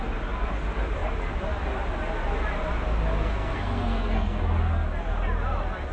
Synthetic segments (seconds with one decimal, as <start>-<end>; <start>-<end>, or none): 3.1-4.4